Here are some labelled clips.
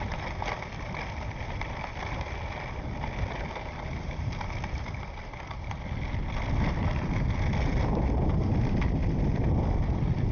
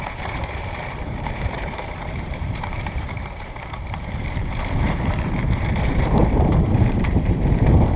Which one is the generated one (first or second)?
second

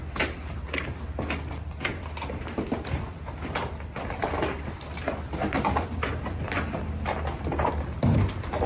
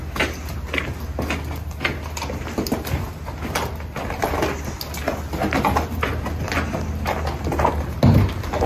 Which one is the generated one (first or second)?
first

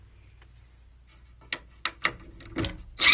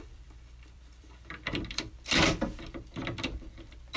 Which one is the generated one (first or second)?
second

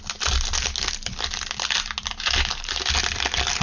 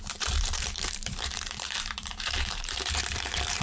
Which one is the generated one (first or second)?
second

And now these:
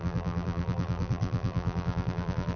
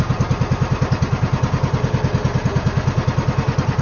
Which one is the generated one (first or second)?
first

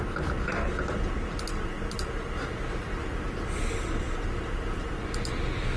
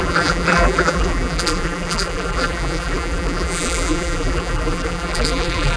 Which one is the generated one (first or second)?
second